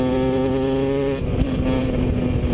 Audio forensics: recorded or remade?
recorded